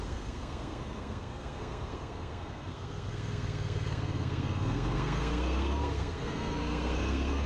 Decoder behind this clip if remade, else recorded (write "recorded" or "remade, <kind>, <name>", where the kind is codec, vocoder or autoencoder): remade, codec, SNAC